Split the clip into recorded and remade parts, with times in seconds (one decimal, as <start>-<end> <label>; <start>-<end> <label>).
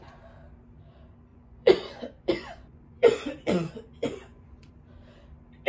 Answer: 0.0-1.3 recorded; 1.3-4.7 remade; 4.7-5.7 recorded